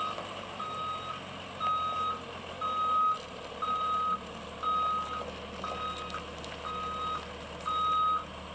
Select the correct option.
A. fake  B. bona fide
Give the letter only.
B